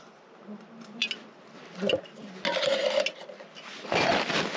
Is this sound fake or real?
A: real